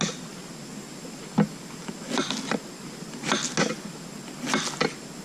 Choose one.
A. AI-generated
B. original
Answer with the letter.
B